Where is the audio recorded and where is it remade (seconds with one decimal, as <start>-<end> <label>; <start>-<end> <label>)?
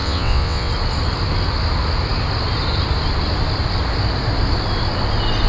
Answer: 0.0-0.7 remade; 0.7-5.5 recorded